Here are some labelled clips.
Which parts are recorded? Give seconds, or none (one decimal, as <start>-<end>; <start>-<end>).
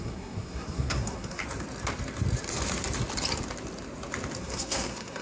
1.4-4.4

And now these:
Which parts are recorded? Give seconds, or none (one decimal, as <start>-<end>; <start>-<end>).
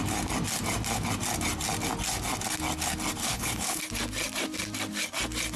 0.0-3.2; 3.8-5.6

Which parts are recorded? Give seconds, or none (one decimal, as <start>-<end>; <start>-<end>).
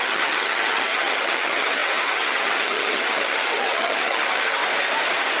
4.6-5.4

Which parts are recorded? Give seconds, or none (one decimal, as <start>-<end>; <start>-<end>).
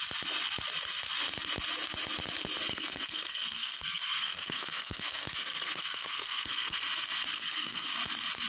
0.0-2.7; 6.8-7.3; 7.9-8.5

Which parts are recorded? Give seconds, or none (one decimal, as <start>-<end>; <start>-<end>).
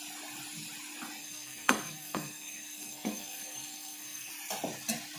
0.0-1.2; 4.3-5.2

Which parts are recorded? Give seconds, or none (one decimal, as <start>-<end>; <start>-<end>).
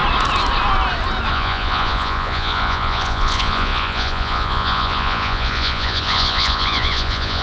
0.0-1.3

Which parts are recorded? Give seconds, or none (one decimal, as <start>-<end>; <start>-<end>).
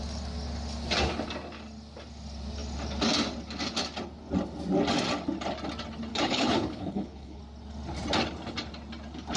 0.0-6.1; 7.4-9.4